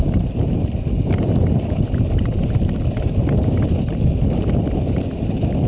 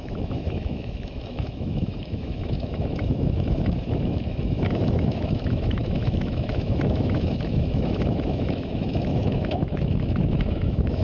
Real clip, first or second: first